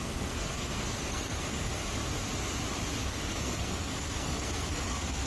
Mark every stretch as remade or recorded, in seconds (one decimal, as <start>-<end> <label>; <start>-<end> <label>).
0.0-1.8 remade; 1.8-3.0 recorded; 3.0-5.3 remade

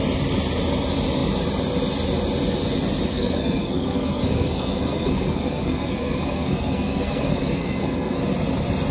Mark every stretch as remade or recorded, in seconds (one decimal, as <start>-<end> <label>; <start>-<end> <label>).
0.0-3.1 recorded; 3.1-8.2 remade; 8.2-8.9 recorded

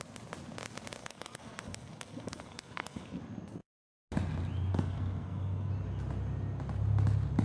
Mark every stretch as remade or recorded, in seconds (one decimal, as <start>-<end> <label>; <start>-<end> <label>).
0.0-1.0 recorded; 1.0-3.2 remade; 3.2-4.7 recorded; 4.7-5.7 remade; 5.7-7.4 recorded

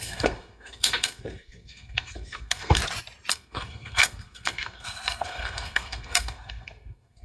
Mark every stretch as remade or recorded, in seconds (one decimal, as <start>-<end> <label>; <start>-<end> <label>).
0.0-2.8 remade; 2.8-3.3 recorded; 3.3-7.2 remade

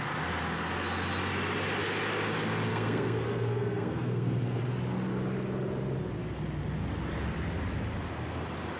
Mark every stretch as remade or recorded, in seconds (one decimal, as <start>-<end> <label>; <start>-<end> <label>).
0.0-2.7 recorded; 2.7-4.6 remade; 4.6-8.8 recorded